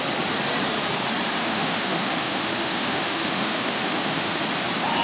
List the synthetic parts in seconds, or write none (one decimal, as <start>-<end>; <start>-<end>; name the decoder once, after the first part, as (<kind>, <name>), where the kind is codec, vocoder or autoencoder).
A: 1.4-4.4 (autoencoder, DAC-VAE)